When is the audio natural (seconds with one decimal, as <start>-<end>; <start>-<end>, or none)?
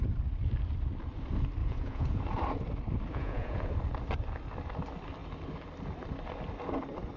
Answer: 0.0-1.6; 2.2-3.1; 3.7-7.2